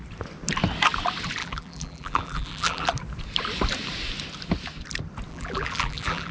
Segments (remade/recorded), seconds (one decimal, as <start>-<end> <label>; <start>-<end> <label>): 0.0-1.4 recorded; 1.4-2.9 remade; 2.9-5.3 recorded; 5.3-6.3 remade